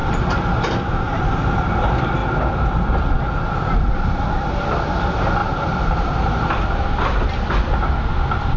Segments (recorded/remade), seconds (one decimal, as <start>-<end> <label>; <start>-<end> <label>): 0.0-5.4 recorded; 5.4-8.1 remade; 8.1-8.6 recorded